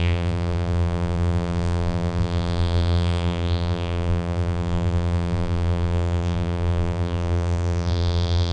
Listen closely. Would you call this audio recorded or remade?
remade